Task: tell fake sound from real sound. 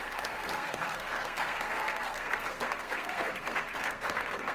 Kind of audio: fake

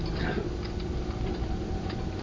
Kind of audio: real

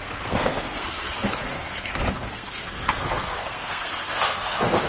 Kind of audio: fake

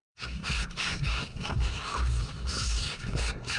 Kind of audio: fake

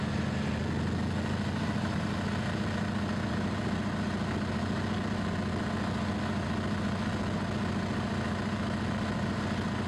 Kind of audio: real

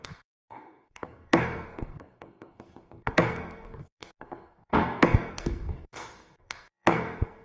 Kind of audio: fake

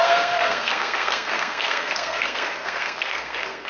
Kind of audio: fake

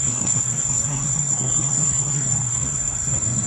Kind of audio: fake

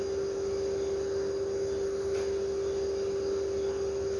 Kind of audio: real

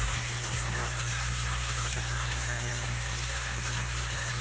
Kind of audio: fake